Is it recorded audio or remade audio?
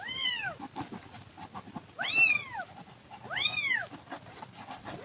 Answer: recorded